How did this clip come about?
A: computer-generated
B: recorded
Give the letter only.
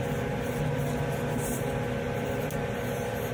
B